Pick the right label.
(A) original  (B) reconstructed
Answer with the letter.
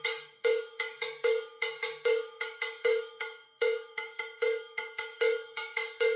B